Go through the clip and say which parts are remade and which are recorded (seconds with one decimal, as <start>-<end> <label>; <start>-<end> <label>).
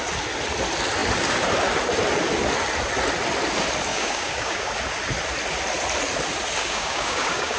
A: 0.0-3.9 recorded; 3.9-4.7 remade; 4.7-6.6 recorded; 6.6-7.6 remade